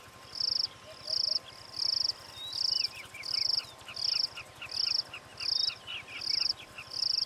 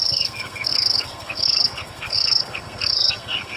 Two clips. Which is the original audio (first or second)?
first